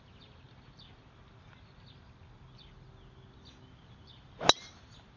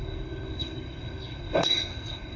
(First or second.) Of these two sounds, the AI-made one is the second